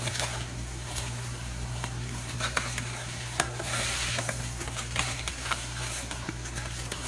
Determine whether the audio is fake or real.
fake